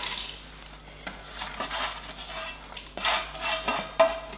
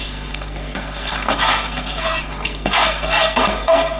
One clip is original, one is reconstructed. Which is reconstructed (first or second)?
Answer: second